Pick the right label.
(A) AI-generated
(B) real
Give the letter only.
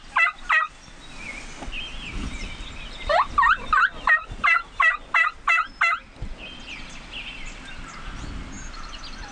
B